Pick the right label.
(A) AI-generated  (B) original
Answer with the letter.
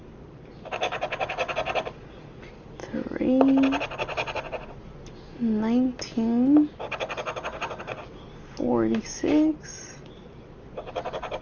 B